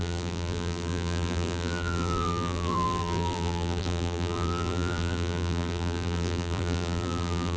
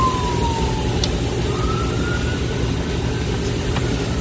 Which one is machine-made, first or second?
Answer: first